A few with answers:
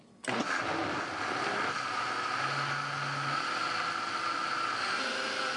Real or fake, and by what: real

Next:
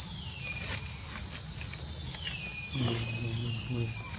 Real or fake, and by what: real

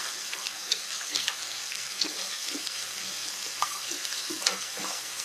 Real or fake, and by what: fake, codec, SNAC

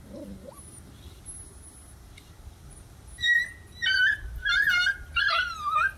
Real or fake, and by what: real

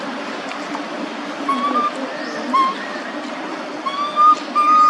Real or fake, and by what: real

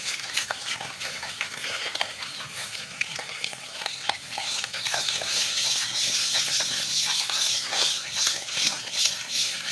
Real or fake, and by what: fake, codec, SNAC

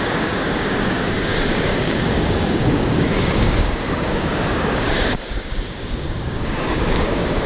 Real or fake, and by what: fake, codec, DAC